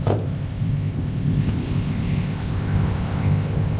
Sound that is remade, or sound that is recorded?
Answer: remade